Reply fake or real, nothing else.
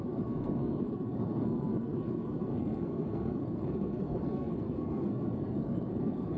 fake